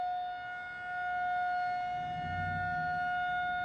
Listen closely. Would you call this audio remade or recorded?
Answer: recorded